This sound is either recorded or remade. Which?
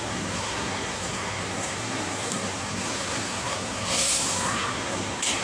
remade